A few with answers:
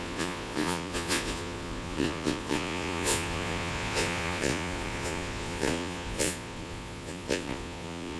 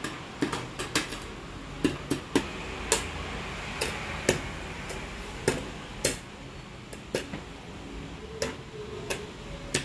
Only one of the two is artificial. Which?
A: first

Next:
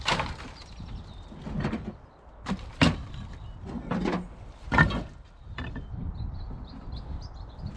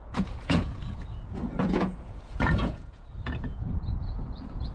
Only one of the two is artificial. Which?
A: second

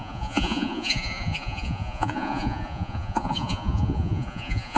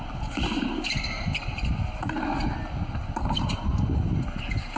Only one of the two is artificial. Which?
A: first